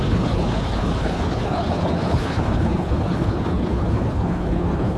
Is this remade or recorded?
remade